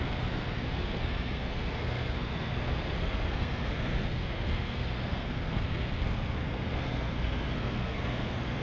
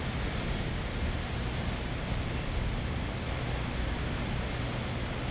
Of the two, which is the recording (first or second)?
second